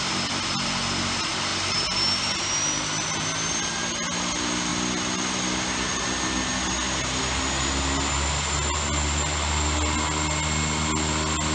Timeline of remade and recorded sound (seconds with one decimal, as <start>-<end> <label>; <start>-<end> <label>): 0.0-11.5 recorded